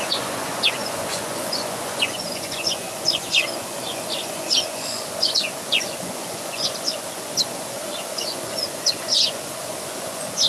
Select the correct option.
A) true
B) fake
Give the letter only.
B